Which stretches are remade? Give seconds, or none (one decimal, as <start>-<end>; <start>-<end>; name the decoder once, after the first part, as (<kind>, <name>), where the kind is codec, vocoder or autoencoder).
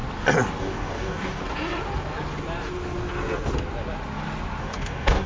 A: 0.6-1.4 (codec, DAC); 4.6-5.3